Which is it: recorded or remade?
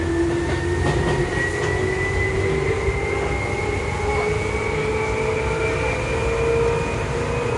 recorded